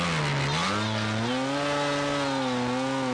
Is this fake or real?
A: real